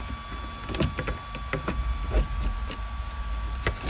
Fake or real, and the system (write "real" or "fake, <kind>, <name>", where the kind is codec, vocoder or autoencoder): real